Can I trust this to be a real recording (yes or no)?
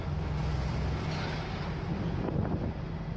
yes